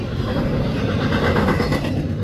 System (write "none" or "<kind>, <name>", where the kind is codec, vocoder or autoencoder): none